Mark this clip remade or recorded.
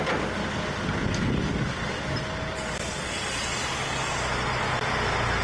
recorded